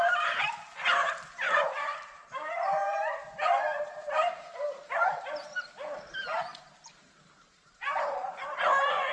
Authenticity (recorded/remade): remade